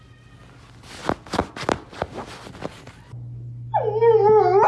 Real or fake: real